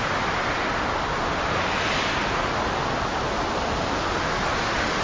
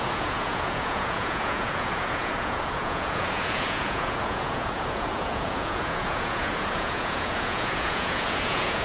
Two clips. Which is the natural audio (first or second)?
first